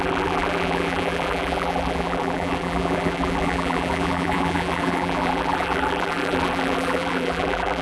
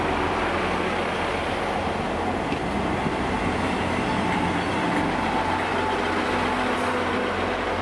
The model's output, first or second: first